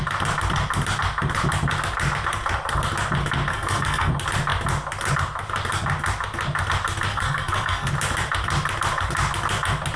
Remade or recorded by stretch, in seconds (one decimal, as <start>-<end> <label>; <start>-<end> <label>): 0.0-3.5 recorded; 3.5-4.1 remade; 4.1-7.1 recorded; 7.1-7.9 remade; 7.9-10.0 recorded